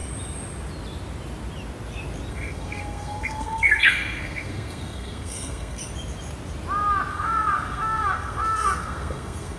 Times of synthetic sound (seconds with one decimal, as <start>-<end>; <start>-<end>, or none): 2.3-5.8; 7.1-9.6

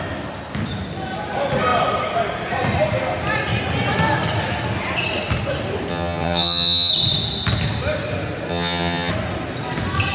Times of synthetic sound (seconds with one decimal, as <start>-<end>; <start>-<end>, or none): 5.9-6.9; 8.5-9.1

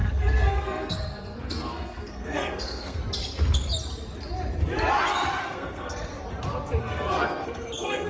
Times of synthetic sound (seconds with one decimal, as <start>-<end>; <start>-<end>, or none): 0.0-3.0; 5.4-6.1; 6.8-8.1

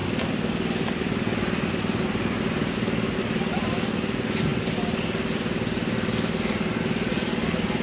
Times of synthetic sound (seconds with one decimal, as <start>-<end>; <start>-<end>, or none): none

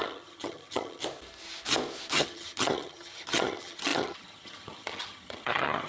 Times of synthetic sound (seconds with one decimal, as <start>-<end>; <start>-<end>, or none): 0.0-1.0; 2.1-5.9

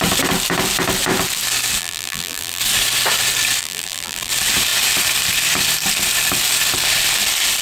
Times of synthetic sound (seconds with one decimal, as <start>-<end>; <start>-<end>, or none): 1.8-2.6; 3.6-4.3

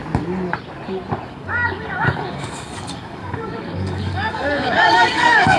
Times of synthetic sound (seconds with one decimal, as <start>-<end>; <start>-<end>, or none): 1.3-5.6